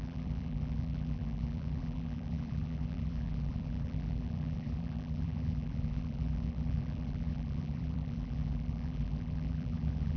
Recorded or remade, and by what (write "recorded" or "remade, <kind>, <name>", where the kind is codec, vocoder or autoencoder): remade, vocoder, BigVGAN v2